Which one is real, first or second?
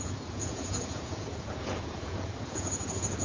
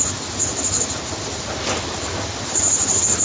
second